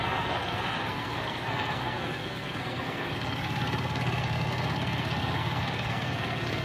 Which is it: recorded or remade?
remade